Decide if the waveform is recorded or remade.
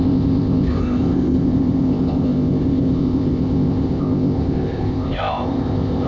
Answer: remade